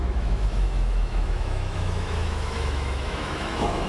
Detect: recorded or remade remade